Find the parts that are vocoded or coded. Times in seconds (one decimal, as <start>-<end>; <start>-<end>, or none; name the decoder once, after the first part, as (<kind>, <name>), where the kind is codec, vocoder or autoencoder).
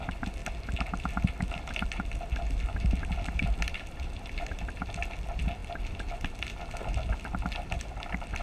none